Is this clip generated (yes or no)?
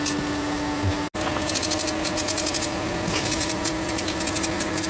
no